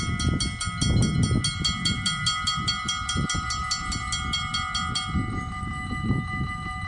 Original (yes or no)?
yes